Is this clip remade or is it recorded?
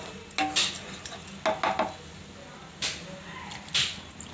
recorded